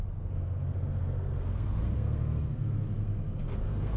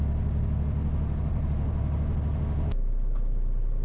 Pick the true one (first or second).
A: second